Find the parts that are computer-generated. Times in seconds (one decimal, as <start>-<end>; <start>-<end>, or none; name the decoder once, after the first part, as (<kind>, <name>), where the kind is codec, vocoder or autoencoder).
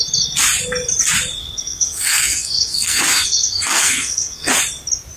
1.4-4.5 (codec, SNAC)